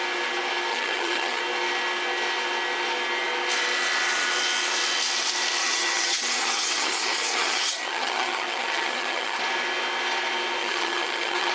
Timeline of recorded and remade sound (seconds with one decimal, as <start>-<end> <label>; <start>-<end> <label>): 0.0-0.7 recorded; 0.7-1.4 remade; 1.4-5.6 recorded; 5.6-9.4 remade; 9.4-10.6 recorded; 10.6-11.5 remade